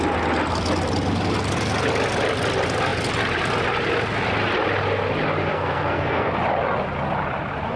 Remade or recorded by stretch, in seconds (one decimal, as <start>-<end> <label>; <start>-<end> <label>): 0.0-5.4 recorded; 5.4-6.3 remade; 6.3-7.8 recorded